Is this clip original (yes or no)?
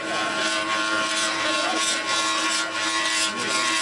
no